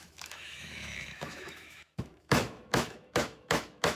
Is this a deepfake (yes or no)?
yes